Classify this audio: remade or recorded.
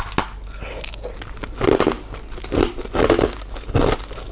recorded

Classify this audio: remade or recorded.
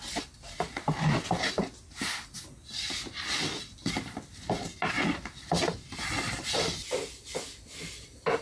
recorded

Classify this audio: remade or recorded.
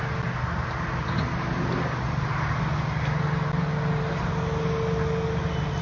recorded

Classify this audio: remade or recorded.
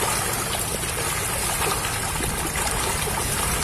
recorded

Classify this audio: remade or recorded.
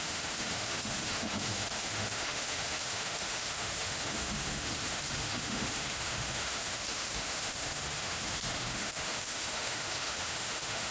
remade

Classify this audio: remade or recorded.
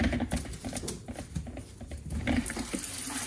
recorded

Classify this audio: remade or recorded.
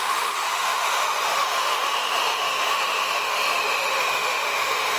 remade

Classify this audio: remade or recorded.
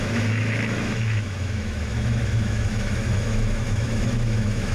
remade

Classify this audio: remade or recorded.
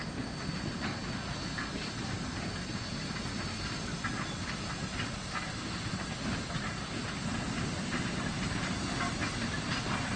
recorded